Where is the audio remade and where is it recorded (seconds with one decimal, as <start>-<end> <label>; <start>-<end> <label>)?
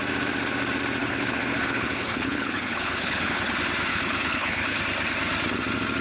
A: 0.0-1.0 recorded; 1.0-3.5 remade; 3.5-3.9 recorded; 3.9-4.8 remade; 4.8-6.0 recorded